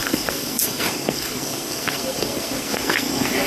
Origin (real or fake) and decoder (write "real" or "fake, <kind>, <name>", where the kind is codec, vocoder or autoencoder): fake, codec, SNAC